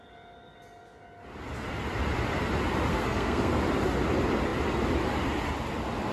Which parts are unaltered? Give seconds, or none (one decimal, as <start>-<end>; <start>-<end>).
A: 0.0-2.9; 3.6-6.1